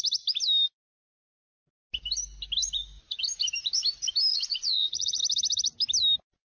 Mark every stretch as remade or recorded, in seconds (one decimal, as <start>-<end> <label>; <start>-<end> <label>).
0.0-4.3 recorded; 4.3-5.2 remade; 5.2-6.5 recorded